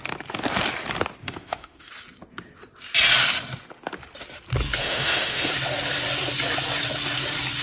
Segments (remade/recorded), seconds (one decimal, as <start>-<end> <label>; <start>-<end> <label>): 0.0-1.2 recorded; 1.2-1.9 remade; 1.9-4.8 recorded; 4.8-5.5 remade; 5.5-7.6 recorded

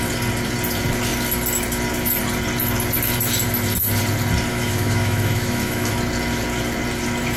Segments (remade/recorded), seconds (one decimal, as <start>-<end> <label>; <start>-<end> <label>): 0.0-4.5 recorded; 4.5-5.9 remade; 5.9-7.4 recorded

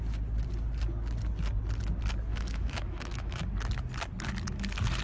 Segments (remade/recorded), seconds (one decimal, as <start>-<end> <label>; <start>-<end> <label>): 0.0-2.3 recorded; 2.3-3.4 remade; 3.4-5.0 recorded

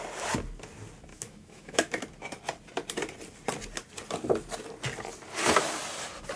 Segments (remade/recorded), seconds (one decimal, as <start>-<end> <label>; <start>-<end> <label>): 0.0-1.1 recorded; 1.1-2.0 remade; 2.0-6.4 recorded

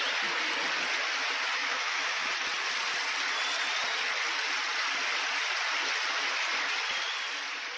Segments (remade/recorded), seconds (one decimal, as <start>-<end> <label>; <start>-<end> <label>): 0.0-1.6 recorded; 1.6-2.3 remade; 2.3-7.8 recorded

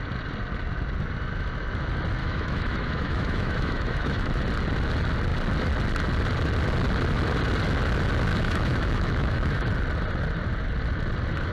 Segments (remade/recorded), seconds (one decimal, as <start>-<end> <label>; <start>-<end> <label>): 0.0-2.2 recorded; 2.2-4.4 remade; 4.4-8.3 recorded; 8.3-9.7 remade; 9.7-11.5 recorded

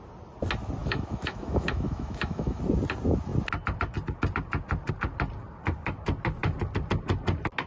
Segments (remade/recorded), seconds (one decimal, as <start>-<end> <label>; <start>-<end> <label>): 0.0-0.8 recorded; 0.8-2.6 remade; 2.6-7.7 recorded